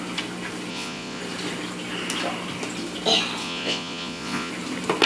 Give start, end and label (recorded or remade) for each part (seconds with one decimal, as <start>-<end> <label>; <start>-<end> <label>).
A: 0.0-0.7 recorded; 0.7-1.2 remade; 1.2-3.4 recorded; 3.4-4.5 remade; 4.5-5.1 recorded